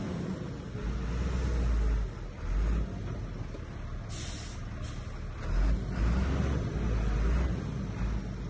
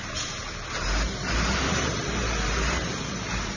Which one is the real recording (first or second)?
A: first